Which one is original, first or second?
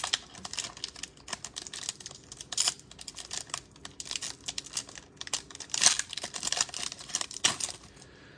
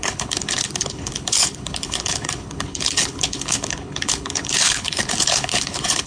first